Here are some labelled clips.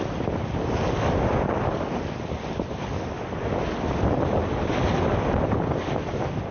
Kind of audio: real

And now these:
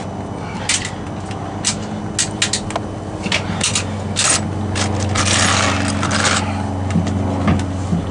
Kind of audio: real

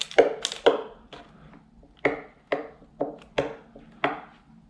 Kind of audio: real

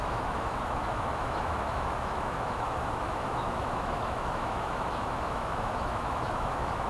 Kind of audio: fake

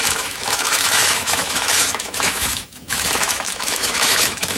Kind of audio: fake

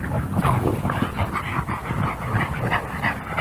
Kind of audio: real